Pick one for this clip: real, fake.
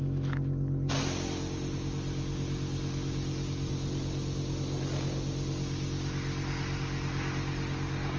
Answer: real